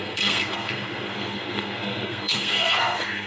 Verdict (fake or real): fake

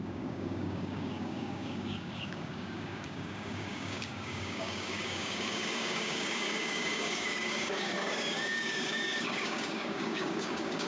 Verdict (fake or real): fake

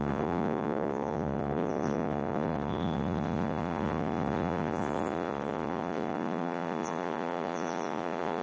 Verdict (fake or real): fake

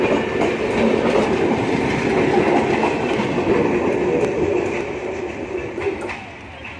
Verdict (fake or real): real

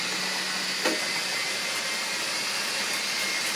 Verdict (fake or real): real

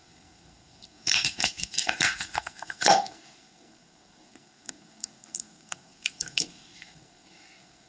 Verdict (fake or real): fake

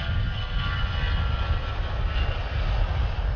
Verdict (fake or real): real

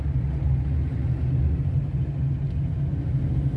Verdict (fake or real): real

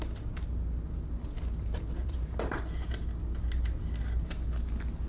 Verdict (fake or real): real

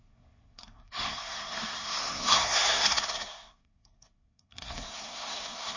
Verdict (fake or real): fake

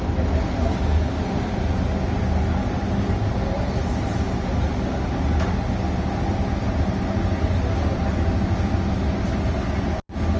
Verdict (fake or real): real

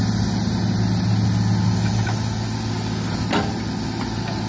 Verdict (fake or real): real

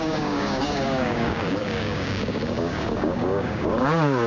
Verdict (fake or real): fake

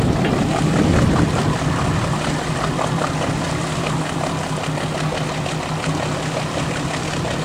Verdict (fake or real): real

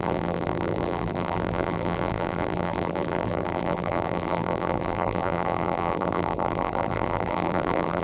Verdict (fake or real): fake